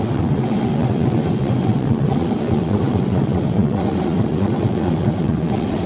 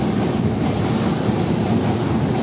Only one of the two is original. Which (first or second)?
second